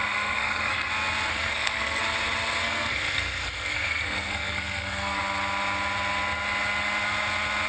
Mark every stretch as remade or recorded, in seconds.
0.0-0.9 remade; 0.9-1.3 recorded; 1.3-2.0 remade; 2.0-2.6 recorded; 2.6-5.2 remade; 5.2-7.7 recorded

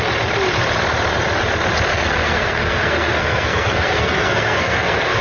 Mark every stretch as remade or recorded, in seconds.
0.0-1.9 recorded; 1.9-5.2 remade

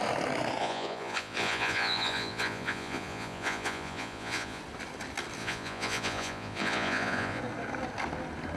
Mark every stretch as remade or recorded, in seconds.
0.0-0.6 recorded; 0.6-4.6 remade; 4.6-5.4 recorded; 5.4-7.4 remade; 7.4-8.6 recorded

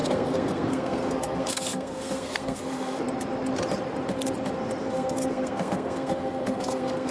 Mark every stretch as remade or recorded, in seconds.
0.0-3.0 remade; 3.0-4.8 recorded; 4.8-7.1 remade